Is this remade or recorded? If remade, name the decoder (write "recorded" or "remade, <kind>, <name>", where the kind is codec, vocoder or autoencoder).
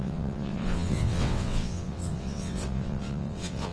remade, vocoder, WaveNeXt